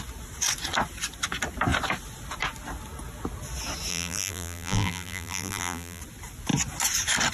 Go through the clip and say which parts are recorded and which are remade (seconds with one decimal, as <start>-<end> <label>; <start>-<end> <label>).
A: 0.0-3.9 recorded; 3.9-6.0 remade; 6.0-7.3 recorded